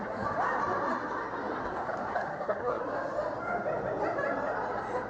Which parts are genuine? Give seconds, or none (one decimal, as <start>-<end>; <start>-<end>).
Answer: 0.0-1.6; 2.8-5.1